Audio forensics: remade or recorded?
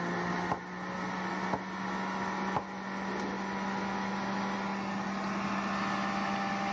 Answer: recorded